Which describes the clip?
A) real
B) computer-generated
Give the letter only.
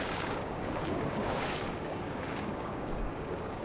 B